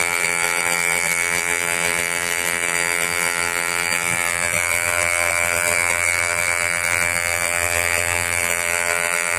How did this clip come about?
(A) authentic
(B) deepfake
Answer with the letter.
B